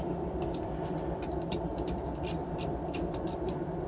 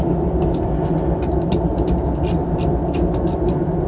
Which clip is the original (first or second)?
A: second